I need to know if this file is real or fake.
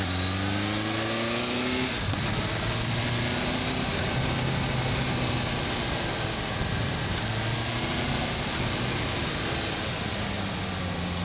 real